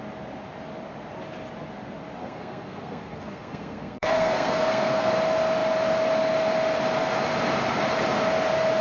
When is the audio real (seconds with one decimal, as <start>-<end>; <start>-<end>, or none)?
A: 0.0-2.2; 5.1-8.8